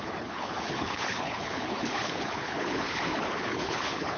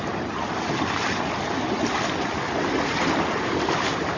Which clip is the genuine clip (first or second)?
second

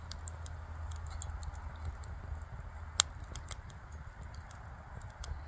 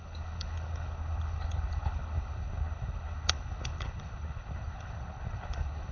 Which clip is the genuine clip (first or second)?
first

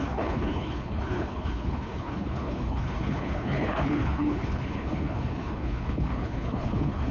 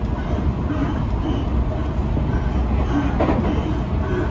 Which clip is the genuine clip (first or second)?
second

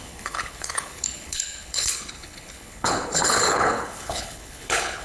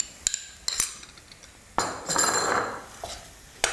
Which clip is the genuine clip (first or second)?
second